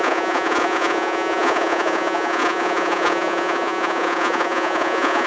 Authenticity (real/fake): fake